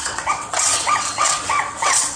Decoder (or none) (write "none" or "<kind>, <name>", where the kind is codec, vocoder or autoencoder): vocoder, WaveNeXt